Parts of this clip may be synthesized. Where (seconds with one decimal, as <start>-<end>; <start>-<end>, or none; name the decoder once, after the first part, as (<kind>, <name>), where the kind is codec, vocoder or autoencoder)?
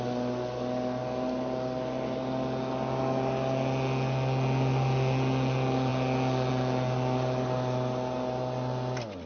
none